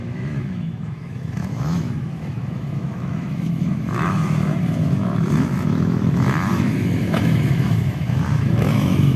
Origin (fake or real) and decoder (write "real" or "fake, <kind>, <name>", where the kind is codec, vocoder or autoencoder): fake, autoencoder, DAC-VAE